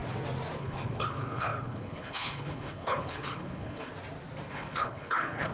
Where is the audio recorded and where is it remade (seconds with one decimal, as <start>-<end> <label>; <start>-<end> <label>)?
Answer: 0.0-0.6 recorded; 0.6-3.9 remade; 3.9-4.5 recorded; 4.5-5.5 remade